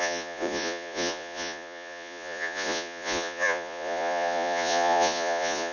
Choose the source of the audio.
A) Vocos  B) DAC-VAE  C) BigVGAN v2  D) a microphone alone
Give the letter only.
A